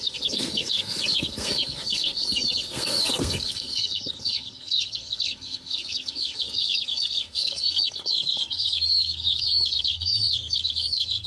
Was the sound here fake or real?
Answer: fake